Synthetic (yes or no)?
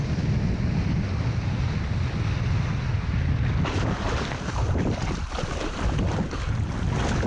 no